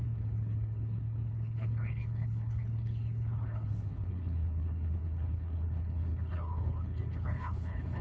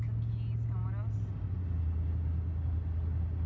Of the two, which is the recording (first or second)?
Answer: second